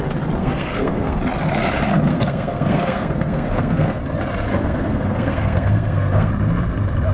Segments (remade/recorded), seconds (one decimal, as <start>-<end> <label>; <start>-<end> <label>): 0.0-0.4 recorded; 0.4-1.2 remade; 1.2-2.1 recorded; 2.1-4.0 remade; 4.0-4.5 recorded; 4.5-6.3 remade; 6.3-7.1 recorded